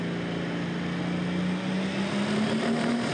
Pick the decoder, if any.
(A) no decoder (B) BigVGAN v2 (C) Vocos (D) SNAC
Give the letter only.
A